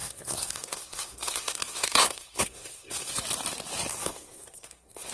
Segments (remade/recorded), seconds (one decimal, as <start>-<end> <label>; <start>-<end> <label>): 0.0-3.1 remade; 3.1-3.9 recorded; 3.9-5.1 remade